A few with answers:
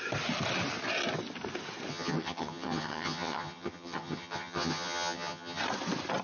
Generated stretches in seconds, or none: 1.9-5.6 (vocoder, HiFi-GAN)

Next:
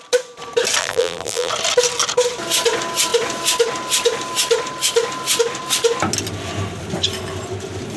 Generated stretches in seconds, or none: 0.8-1.5 (vocoder, BigVGAN v2)

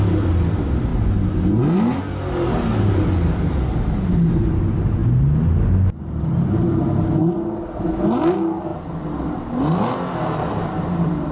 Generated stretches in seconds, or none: none